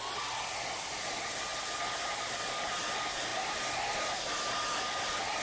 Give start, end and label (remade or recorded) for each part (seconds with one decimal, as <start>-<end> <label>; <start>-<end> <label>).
0.0-5.4 recorded